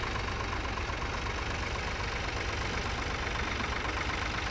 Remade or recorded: recorded